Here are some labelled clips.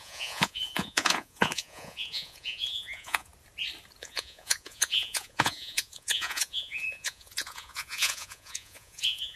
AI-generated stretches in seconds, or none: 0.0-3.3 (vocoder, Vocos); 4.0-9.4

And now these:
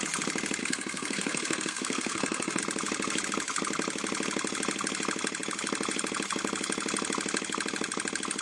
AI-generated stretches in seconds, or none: 0.6-2.6 (codec, SNAC)

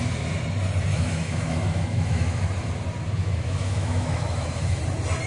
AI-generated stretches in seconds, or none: 0.9-2.4 (autoencoder, DAC-VAE); 3.2-4.8

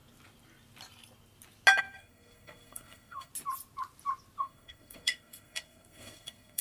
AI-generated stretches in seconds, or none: 1.8-3.3 (codec, SNAC); 4.4-6.6

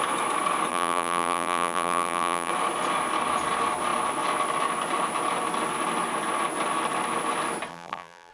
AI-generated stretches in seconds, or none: 0.7-2.5 (vocoder, BigVGAN v2); 7.7-8.3

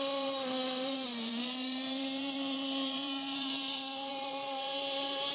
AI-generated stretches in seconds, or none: 0.0-5.3 (vocoder, BigVGAN v2)